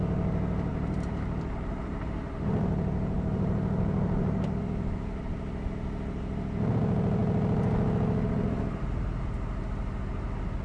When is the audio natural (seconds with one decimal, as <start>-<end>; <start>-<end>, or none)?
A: 0.0-0.7; 4.6-10.6